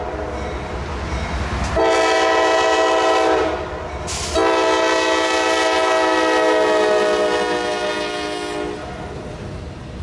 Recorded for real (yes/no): yes